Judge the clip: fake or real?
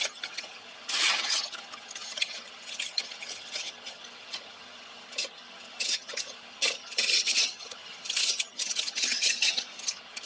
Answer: fake